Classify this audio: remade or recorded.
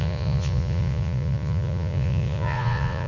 remade